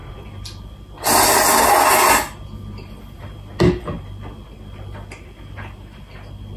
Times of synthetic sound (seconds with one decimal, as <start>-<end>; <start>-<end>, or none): none